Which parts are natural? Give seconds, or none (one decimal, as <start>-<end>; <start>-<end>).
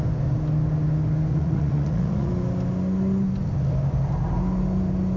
0.0-1.3; 2.3-5.2